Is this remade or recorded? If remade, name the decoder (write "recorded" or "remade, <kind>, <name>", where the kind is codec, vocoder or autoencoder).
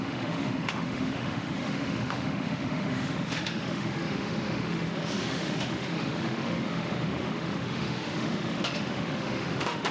remade, autoencoder, DAC-VAE